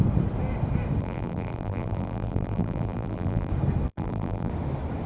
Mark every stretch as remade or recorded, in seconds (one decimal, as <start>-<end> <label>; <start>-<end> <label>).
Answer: 0.0-1.0 recorded; 1.0-3.5 remade; 3.5-3.9 recorded; 3.9-4.5 remade; 4.5-5.1 recorded